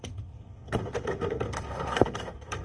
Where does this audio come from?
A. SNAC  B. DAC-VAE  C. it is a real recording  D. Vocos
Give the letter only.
A